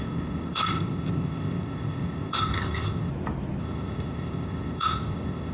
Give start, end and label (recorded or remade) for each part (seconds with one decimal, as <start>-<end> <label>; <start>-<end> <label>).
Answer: 0.0-3.1 remade; 3.1-3.6 recorded; 3.6-5.5 remade

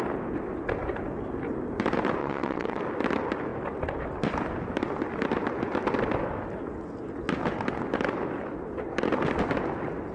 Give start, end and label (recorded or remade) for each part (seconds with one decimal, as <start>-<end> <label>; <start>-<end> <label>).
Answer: 0.0-2.2 recorded; 2.2-2.8 remade; 2.8-10.1 recorded